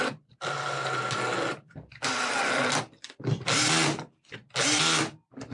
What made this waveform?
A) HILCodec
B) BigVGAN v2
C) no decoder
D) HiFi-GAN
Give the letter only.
C